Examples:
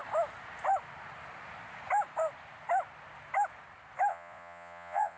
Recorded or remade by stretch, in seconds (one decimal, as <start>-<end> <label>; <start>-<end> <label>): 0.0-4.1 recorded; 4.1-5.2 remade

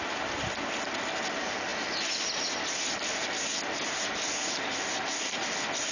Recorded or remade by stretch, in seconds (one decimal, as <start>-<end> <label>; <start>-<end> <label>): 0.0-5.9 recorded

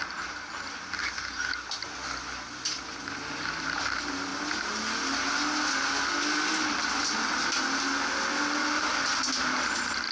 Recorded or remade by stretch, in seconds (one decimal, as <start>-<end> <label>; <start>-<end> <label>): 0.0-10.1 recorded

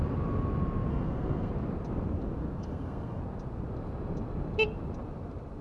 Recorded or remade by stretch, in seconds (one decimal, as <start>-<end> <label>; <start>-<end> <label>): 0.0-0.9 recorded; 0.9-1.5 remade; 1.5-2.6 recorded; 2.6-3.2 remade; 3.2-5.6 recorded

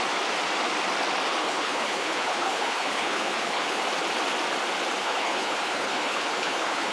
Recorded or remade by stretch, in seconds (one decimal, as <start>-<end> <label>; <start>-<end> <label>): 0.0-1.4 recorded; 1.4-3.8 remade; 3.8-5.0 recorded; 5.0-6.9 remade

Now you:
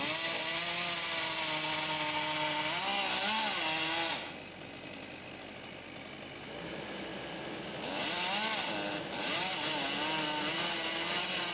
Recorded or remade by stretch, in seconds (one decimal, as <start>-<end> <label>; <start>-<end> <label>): 0.0-11.5 recorded

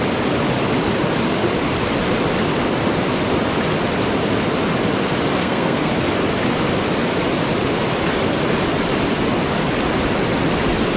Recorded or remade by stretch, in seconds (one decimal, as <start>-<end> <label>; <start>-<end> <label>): 0.0-5.4 recorded; 5.4-5.9 remade; 5.9-11.0 recorded

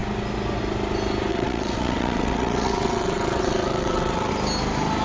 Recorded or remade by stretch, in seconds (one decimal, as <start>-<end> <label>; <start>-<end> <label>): 0.0-1.3 recorded; 1.3-4.3 remade; 4.3-5.0 recorded